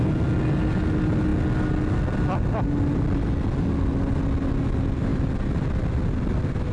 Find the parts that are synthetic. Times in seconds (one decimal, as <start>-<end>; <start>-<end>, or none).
none